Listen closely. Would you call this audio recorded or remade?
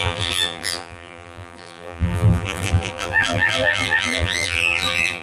remade